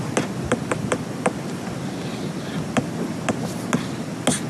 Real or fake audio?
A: real